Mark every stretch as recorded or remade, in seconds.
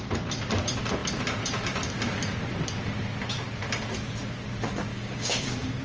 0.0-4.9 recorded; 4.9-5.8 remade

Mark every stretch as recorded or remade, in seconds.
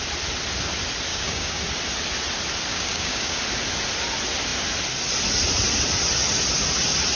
0.0-1.1 recorded; 1.1-1.6 remade; 1.6-2.7 recorded; 2.7-3.4 remade; 3.4-7.2 recorded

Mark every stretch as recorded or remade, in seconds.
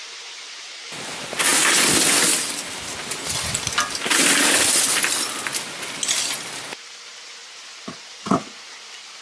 0.0-9.2 recorded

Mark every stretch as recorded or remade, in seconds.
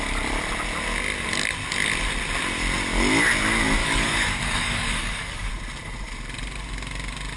0.0-3.8 recorded; 3.8-5.5 remade; 5.5-7.4 recorded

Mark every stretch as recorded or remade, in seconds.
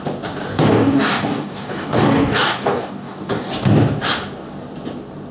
0.0-0.5 recorded; 0.5-3.5 remade; 3.5-5.3 recorded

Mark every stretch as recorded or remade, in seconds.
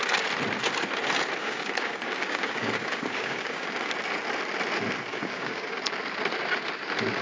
0.0-1.4 recorded; 1.4-3.9 remade; 3.9-5.1 recorded; 5.1-5.8 remade; 5.8-7.2 recorded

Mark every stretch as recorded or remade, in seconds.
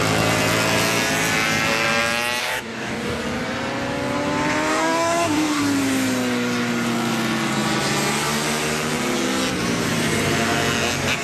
0.0-2.4 recorded; 2.4-3.2 remade; 3.2-4.7 recorded; 4.7-5.6 remade; 5.6-11.2 recorded